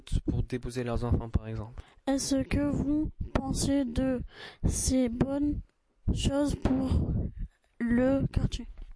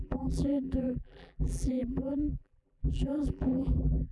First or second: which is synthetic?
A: second